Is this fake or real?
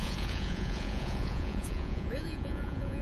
fake